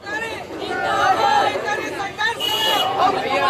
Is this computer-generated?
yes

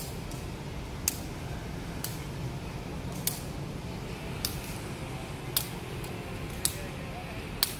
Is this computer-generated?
no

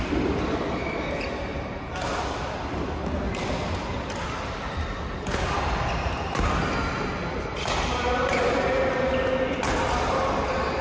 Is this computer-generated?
no